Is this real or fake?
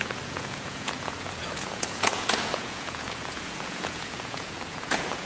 fake